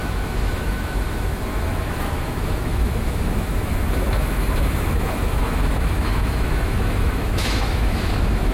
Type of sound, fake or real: fake